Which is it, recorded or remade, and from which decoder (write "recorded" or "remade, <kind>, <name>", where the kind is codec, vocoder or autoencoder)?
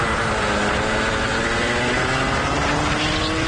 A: recorded